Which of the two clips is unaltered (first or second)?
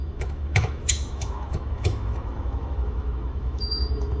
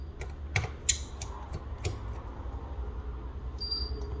second